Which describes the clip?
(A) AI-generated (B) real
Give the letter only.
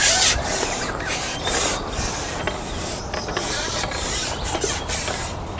A